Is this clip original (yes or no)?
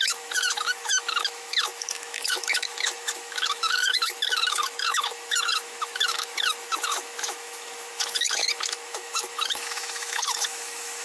no